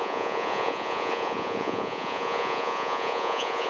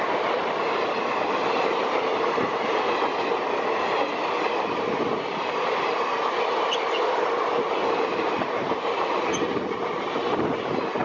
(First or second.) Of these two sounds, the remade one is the first